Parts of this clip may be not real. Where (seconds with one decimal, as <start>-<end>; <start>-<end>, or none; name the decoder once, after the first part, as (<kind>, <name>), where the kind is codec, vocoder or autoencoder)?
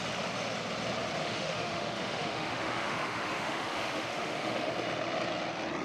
1.2-4.7 (autoencoder, DAC-VAE)